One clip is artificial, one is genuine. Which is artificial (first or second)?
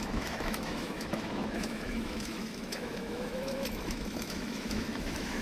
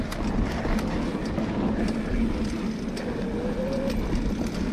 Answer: first